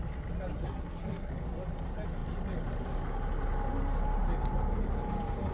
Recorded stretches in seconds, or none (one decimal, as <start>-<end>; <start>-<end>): 0.0-0.6; 1.3-5.5